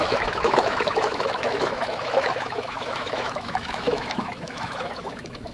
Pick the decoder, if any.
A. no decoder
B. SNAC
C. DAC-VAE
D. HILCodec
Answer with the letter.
C